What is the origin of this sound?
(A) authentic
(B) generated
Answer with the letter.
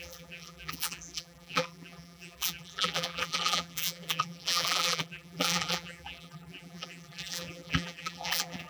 B